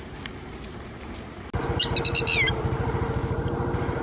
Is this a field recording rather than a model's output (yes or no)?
yes